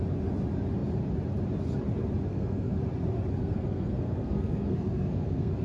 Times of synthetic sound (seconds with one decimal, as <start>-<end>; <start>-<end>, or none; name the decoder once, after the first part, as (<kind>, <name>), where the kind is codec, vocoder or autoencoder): 2.3-2.8 (codec, SNAC); 3.4-5.6